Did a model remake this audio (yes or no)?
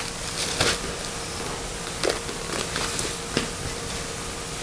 no